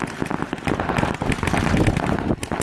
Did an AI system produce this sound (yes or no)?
no